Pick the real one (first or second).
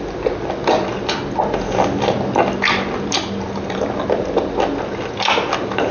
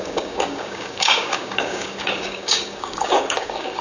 first